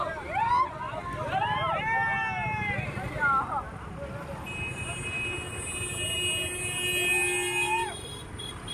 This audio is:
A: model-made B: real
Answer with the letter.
B